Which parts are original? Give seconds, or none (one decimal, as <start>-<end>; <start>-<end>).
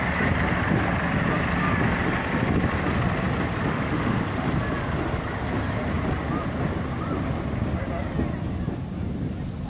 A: 0.0-3.7; 4.2-9.7